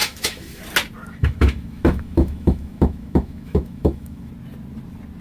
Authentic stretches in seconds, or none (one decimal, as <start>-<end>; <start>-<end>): 0.6-1.2; 4.3-5.2